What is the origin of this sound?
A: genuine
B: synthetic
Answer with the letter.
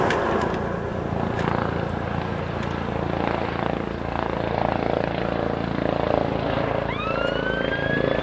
A